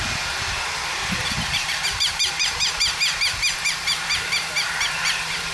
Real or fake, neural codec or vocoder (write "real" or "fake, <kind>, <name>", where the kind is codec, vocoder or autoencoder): fake, vocoder, BigVGAN v2